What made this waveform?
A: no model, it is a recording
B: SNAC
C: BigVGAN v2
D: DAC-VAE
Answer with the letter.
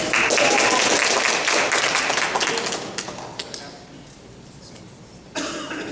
A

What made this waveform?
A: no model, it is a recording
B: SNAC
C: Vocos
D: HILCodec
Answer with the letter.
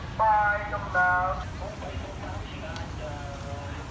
A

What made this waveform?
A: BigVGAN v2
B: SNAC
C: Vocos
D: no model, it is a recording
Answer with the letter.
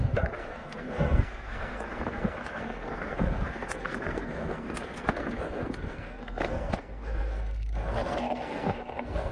B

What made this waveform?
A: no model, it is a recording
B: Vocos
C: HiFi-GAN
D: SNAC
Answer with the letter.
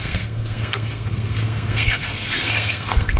D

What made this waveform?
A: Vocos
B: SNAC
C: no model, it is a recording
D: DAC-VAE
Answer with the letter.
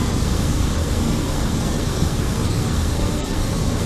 B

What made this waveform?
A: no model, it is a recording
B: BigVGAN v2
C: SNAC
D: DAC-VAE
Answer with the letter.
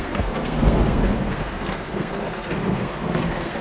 C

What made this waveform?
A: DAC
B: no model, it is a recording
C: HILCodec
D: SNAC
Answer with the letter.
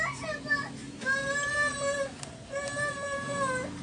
B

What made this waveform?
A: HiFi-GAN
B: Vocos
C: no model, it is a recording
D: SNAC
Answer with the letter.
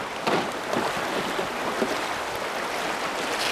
C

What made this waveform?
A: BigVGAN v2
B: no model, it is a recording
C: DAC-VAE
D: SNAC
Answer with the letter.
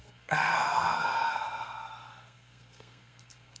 D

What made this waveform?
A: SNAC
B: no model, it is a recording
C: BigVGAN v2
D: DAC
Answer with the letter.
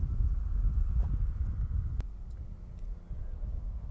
B